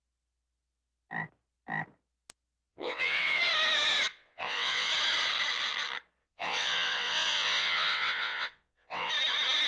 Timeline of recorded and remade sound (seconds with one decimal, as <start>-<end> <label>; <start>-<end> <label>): 0.0-2.7 recorded; 2.7-3.4 remade; 3.4-4.1 recorded; 4.1-4.9 remade; 4.9-6.2 recorded; 6.2-9.1 remade; 9.1-9.7 recorded